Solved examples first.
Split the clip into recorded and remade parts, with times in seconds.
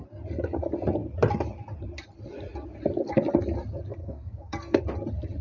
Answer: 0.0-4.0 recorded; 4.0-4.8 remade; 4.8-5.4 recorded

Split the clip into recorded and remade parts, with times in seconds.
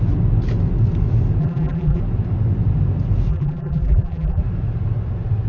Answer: 0.0-1.4 recorded; 1.4-2.0 remade; 2.0-3.3 recorded; 3.3-4.4 remade; 4.4-5.5 recorded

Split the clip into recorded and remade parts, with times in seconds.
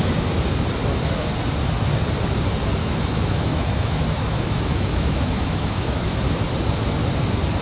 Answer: 0.0-2.8 recorded; 2.8-6.4 remade; 6.4-7.6 recorded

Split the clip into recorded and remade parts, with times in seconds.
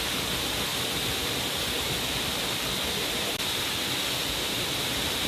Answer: 0.0-0.7 recorded; 0.7-2.7 remade; 2.7-4.2 recorded; 4.2-5.3 remade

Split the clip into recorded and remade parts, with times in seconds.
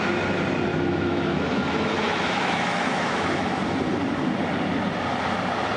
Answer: 0.0-0.7 recorded; 0.7-3.6 remade; 3.6-5.8 recorded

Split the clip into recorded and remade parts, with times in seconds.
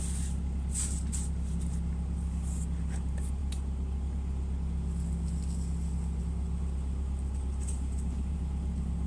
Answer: 0.0-3.4 remade; 3.4-6.2 recorded; 6.2-9.1 remade